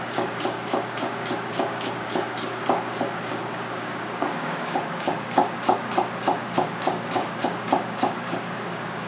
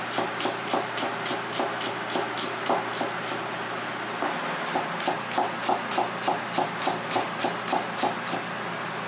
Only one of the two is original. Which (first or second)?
second